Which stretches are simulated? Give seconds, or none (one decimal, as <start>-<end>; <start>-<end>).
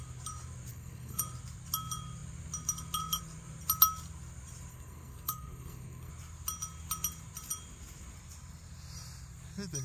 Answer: 0.7-1.2; 4.7-6.1